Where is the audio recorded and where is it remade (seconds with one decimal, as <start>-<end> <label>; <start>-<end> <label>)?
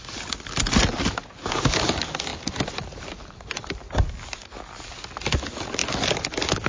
0.0-6.7 recorded